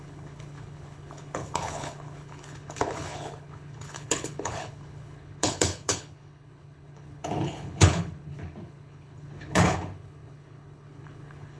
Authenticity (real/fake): fake